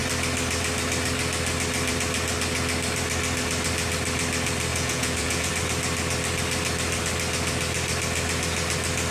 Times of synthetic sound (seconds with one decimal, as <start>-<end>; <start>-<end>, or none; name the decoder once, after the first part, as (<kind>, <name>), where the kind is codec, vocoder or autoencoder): 4.7-5.5 (vocoder, Vocos)